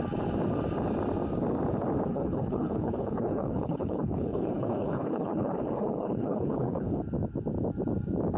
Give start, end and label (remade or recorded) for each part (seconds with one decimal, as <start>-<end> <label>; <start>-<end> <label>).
0.0-2.1 recorded; 2.1-7.0 remade; 7.0-8.4 recorded